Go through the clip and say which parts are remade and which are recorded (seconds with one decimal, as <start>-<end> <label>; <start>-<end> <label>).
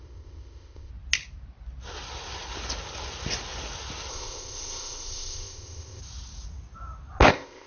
0.0-0.9 remade; 0.9-4.1 recorded; 4.1-6.0 remade; 6.0-7.3 recorded; 7.3-7.7 remade